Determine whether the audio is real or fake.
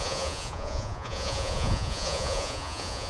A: fake